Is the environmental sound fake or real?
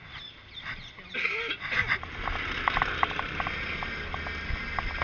real